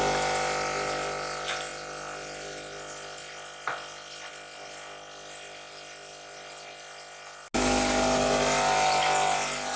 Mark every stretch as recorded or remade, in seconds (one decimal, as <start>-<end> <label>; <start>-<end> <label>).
0.0-9.8 recorded